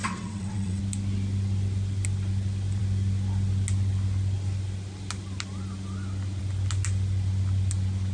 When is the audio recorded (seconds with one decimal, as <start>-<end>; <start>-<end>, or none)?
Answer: 0.8-8.1